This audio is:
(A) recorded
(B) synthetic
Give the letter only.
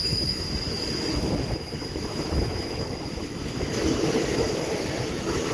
B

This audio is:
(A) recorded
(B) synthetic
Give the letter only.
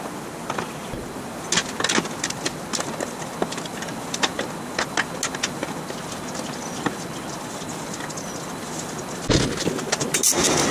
A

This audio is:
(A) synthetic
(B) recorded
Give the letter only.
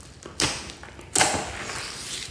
B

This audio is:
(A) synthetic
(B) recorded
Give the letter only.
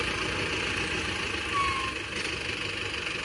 B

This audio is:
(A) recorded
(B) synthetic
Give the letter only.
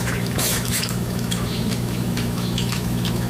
B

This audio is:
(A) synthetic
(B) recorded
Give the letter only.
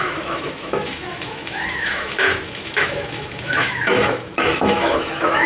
A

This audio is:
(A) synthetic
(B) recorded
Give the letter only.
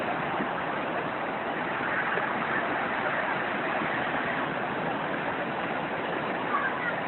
B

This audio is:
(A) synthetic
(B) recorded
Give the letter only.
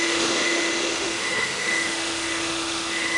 A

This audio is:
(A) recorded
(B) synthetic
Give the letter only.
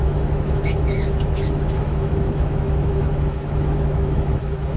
B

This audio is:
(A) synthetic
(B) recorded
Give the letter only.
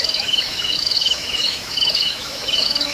A